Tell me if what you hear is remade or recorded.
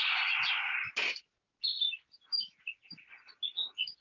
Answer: recorded